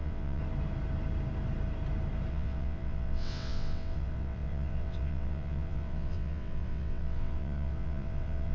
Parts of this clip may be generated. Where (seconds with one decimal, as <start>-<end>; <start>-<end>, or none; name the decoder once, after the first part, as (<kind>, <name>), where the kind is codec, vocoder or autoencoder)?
0.0-0.4 (vocoder, WaveNeXt); 2.3-8.5